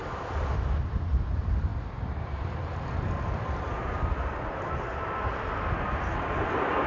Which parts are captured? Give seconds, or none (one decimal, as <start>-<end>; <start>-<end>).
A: 0.0-6.9